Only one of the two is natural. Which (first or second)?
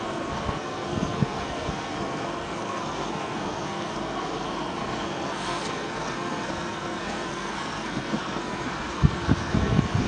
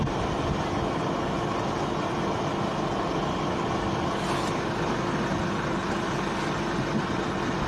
second